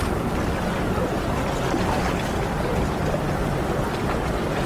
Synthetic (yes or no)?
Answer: no